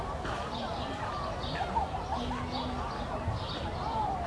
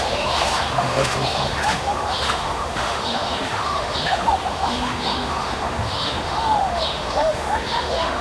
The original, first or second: first